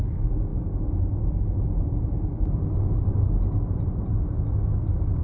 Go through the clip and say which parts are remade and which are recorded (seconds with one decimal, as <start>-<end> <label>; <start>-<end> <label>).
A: 0.0-5.2 recorded